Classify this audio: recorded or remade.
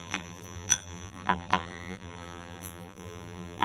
remade